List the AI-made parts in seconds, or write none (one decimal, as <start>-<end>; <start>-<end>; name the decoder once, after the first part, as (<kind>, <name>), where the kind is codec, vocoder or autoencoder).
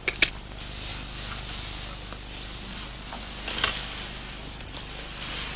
0.0-0.9 (vocoder, BigVGAN v2); 4.3-5.6